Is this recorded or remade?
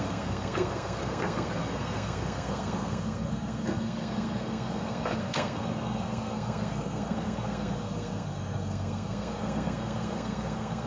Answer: remade